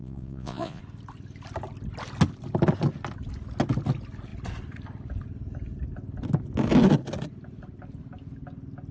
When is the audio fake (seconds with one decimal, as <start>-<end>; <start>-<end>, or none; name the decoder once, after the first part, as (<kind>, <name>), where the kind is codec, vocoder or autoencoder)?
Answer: 0.0-0.8 (vocoder, Vocos)